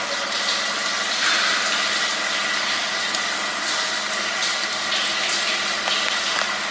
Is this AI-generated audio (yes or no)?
no